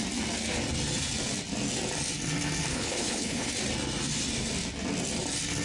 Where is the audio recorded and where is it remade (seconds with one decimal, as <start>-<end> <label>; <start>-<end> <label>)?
0.0-2.7 recorded; 2.7-3.5 remade; 3.5-5.6 recorded